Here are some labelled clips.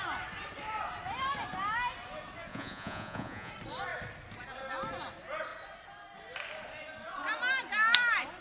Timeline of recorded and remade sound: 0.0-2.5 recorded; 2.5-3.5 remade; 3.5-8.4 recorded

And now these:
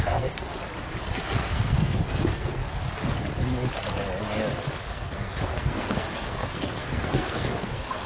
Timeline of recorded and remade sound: 0.0-0.5 remade; 0.5-1.3 recorded; 1.3-2.6 remade; 2.6-4.8 recorded; 4.8-8.1 remade

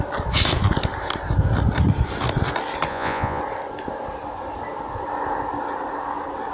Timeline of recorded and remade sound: 0.0-2.9 recorded; 2.9-3.4 remade; 3.4-6.5 recorded

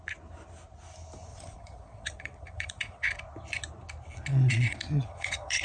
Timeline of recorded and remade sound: 0.0-1.3 recorded; 1.3-3.1 remade; 3.1-4.3 recorded; 4.3-5.6 remade

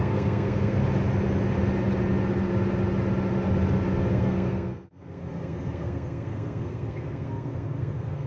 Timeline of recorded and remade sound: 0.0-0.8 remade; 0.8-4.1 recorded; 4.1-8.3 remade

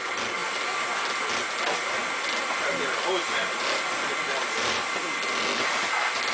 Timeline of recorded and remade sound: 0.0-6.3 recorded

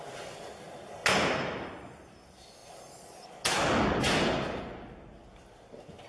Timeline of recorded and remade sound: 0.0-6.1 recorded